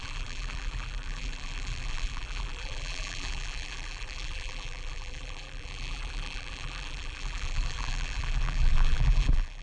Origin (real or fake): fake